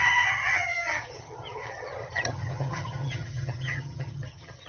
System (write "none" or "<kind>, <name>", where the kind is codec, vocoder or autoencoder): vocoder, HiFi-GAN